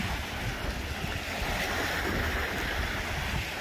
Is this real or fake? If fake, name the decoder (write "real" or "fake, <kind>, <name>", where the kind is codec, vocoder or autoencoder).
real